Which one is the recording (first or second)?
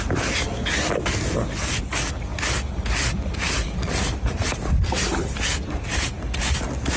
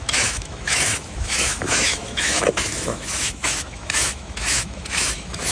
first